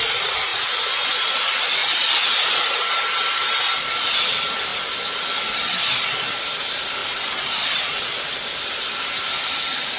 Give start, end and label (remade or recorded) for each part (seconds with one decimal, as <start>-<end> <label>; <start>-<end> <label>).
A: 0.0-1.8 remade; 1.8-3.9 recorded; 3.9-4.7 remade; 4.7-6.4 recorded; 6.4-10.0 remade